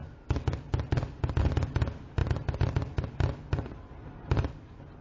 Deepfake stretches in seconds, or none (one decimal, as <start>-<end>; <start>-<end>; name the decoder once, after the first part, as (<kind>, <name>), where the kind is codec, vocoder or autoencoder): none